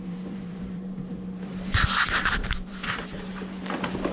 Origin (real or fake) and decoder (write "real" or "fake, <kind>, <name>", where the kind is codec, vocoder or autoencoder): fake, vocoder, BigVGAN v2